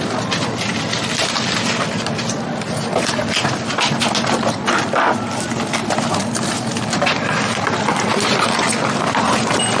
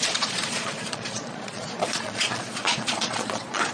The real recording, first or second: first